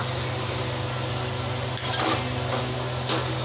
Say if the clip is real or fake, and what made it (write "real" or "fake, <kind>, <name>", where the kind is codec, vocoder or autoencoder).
real